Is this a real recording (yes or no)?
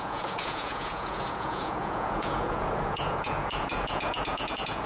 no